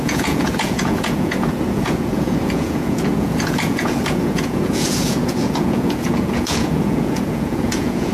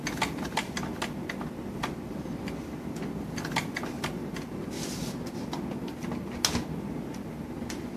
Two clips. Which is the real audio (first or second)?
second